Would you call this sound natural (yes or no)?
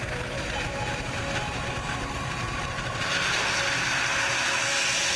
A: yes